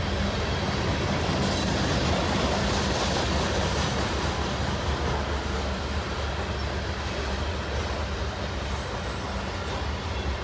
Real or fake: real